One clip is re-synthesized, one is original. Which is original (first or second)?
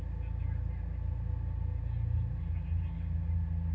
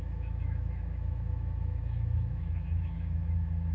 first